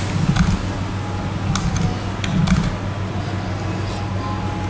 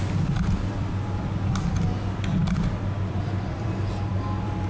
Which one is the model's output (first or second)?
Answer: second